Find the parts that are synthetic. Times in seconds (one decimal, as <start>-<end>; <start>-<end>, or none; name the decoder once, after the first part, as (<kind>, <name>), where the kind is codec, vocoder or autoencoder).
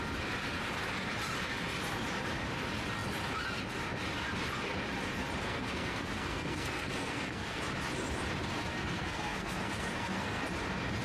5.4-7.6 (codec, SNAC); 8.7-10.4